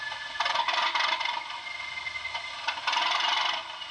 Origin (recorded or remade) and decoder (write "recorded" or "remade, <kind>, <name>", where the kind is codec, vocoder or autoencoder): recorded